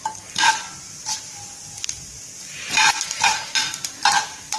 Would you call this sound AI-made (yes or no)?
no